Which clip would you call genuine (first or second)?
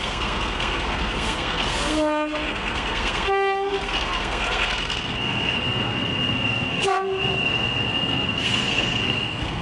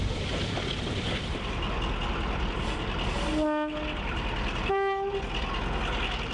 second